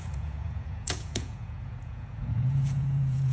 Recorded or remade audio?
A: remade